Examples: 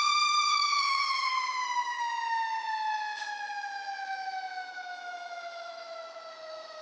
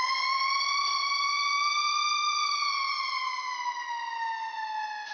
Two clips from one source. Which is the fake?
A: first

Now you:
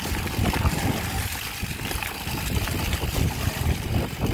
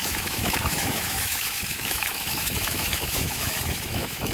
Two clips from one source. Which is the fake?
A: second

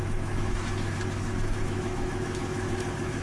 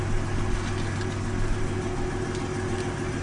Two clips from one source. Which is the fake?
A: first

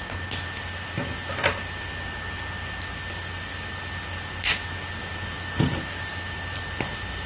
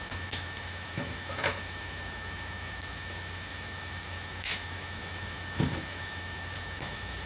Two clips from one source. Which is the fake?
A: second